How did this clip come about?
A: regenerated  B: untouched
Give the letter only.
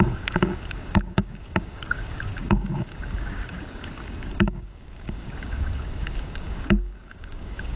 A